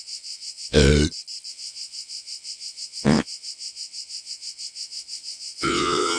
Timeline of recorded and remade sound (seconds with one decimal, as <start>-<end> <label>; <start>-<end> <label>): 0.0-0.9 remade; 0.9-1.5 recorded; 1.5-6.2 remade